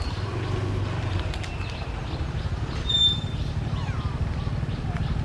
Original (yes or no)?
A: yes